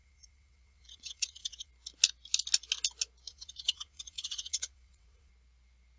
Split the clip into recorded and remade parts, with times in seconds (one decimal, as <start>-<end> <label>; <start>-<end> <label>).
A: 0.0-1.7 remade; 1.7-3.3 recorded; 3.3-5.3 remade; 5.3-6.0 recorded